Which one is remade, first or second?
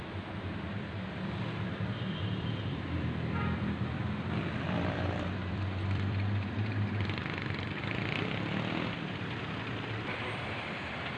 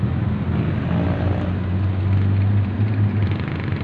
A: first